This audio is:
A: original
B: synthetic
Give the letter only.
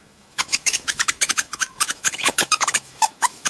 B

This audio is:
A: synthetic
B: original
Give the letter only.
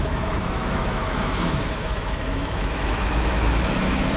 A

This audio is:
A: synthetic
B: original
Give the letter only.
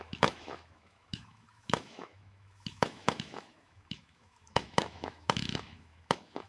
A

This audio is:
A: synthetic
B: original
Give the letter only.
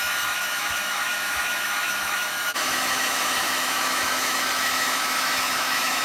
A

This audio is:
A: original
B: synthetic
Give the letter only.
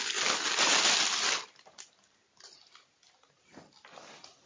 A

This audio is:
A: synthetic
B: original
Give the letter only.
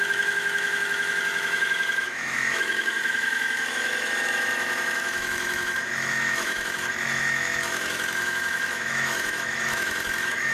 A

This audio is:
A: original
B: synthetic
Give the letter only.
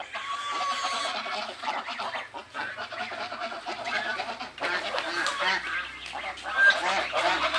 A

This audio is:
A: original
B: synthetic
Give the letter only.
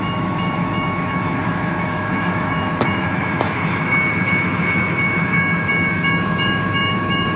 B